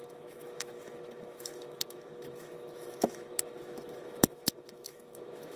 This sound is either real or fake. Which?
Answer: fake